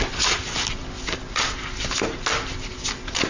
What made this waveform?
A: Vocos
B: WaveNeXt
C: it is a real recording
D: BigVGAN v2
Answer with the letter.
C